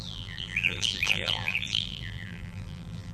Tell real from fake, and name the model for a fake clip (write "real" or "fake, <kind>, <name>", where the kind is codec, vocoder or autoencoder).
fake, vocoder, BigVGAN v2